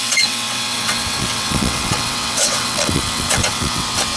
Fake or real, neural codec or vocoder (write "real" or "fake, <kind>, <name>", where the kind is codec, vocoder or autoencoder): fake, vocoder, WaveNeXt